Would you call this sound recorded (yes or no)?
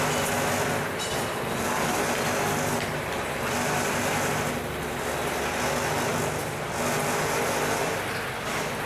yes